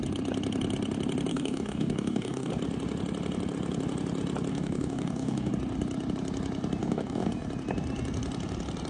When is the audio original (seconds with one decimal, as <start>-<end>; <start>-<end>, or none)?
0.0-1.3; 2.5-4.5; 5.5-6.8; 7.3-8.9